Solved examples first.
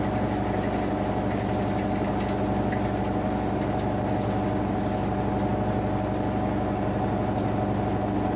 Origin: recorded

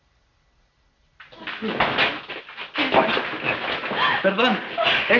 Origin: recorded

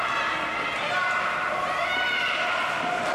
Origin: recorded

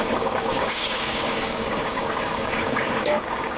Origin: remade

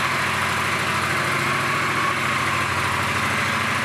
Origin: recorded